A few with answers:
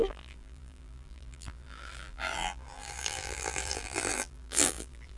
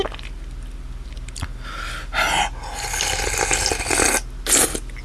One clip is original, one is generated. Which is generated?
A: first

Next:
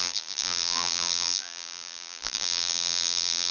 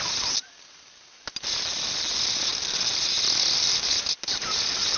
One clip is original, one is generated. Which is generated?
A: first